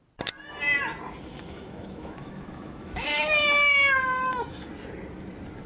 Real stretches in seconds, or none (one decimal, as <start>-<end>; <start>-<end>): 0.0-1.3; 4.7-5.7